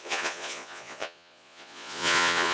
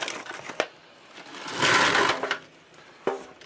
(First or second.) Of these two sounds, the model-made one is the first